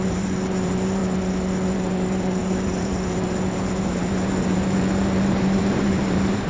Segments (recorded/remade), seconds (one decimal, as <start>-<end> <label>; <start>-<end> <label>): 0.0-1.0 remade; 1.0-1.7 recorded; 1.7-6.5 remade